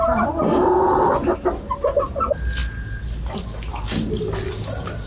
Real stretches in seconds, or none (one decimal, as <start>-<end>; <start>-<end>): 0.0-5.1